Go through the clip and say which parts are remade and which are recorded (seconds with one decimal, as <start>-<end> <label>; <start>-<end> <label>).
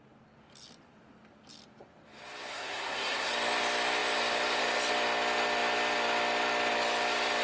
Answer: 0.0-2.5 recorded; 2.5-3.3 remade; 3.3-7.4 recorded